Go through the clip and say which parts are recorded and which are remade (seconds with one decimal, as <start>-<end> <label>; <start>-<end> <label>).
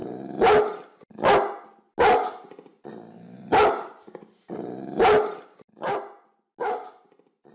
0.0-7.5 recorded